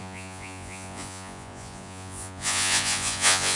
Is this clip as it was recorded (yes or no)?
no